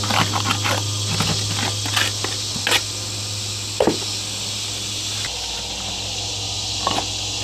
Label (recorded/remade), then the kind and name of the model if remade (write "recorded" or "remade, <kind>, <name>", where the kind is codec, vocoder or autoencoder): recorded